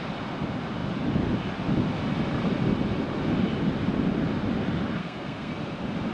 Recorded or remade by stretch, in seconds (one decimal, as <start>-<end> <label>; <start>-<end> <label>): 0.0-5.0 recorded; 5.0-5.5 remade; 5.5-6.1 recorded